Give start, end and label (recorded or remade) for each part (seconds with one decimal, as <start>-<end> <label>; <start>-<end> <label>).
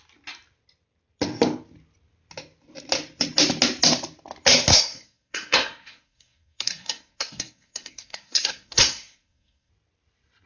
0.0-4.7 recorded; 4.7-9.7 remade; 9.7-10.5 recorded